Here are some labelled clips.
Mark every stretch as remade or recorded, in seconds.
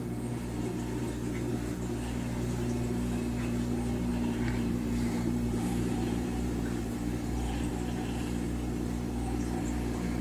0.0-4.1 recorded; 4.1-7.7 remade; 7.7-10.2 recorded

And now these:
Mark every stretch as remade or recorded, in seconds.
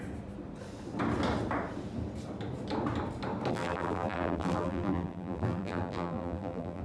0.0-3.5 recorded; 3.5-6.8 remade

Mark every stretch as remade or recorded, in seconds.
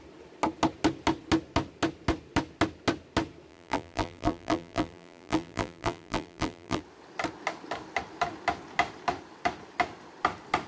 0.0-3.5 recorded; 3.5-6.8 remade; 6.8-10.7 recorded